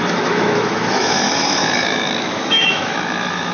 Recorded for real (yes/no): no